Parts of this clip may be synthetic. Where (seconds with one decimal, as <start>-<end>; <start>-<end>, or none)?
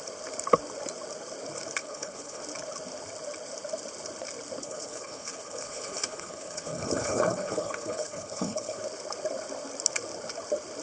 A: 1.8-2.4; 4.6-8.8